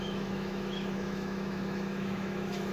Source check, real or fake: fake